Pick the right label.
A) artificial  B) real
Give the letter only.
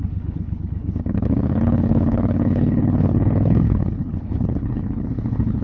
A